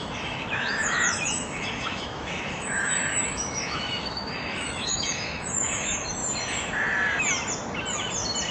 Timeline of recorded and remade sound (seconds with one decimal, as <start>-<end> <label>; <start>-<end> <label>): 0.0-6.2 remade; 6.2-8.5 recorded